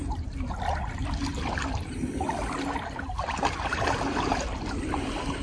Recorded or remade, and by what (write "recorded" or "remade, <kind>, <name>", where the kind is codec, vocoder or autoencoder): recorded